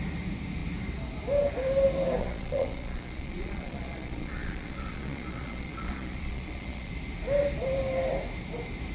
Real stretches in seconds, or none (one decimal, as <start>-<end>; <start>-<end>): 0.0-2.2; 6.9-8.9